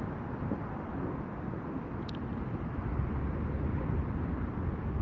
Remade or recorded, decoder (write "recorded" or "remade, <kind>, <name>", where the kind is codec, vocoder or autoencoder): recorded